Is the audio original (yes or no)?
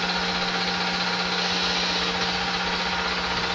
yes